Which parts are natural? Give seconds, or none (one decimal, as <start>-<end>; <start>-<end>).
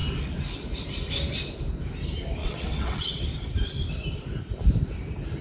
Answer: 0.0-2.4; 3.2-5.4